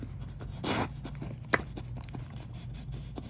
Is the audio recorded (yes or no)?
yes